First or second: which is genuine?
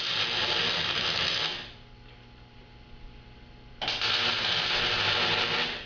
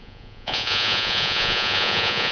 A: first